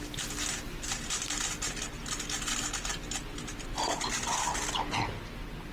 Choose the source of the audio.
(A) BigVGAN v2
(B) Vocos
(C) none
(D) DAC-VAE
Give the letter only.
C